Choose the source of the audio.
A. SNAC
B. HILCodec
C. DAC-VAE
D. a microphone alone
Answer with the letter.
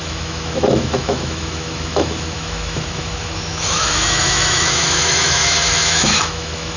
C